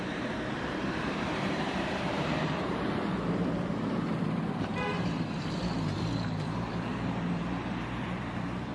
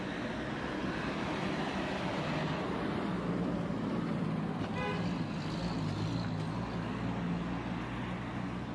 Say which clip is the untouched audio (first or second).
second